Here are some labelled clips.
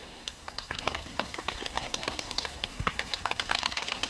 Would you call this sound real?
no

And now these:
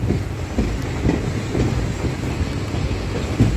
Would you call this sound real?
yes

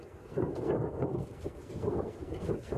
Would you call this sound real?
no